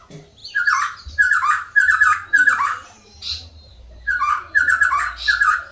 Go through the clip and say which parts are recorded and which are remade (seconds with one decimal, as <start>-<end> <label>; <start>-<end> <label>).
0.0-0.4 recorded; 0.4-3.8 remade; 3.8-5.7 recorded